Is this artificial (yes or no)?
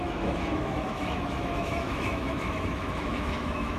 yes